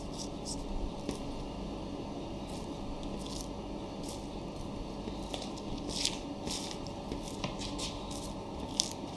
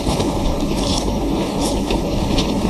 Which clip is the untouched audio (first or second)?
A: first